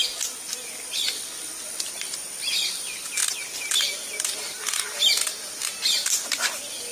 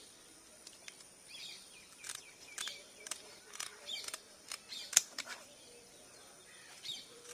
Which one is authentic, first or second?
first